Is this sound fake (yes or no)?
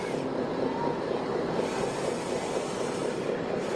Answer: no